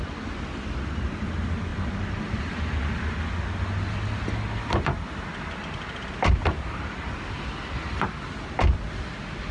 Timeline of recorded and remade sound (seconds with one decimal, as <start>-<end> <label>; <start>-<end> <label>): 0.0-9.5 recorded